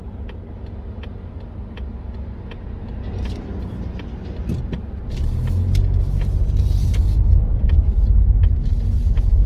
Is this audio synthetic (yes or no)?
no